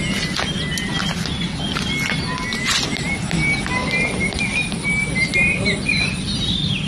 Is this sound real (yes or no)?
yes